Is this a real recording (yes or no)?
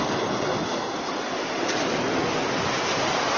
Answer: yes